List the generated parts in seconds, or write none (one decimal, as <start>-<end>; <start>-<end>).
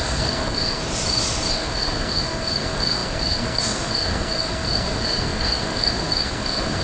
0.0-0.8; 1.5-6.8